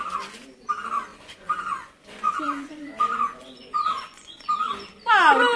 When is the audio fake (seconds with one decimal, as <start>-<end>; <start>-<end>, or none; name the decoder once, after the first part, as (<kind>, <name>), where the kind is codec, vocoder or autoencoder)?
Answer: 1.1-4.5 (vocoder, Vocos)